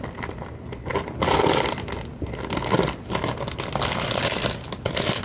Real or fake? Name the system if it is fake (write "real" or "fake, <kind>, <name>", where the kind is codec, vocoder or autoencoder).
real